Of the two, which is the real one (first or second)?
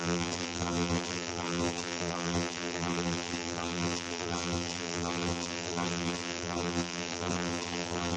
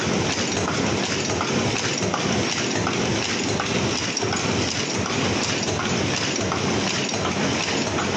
second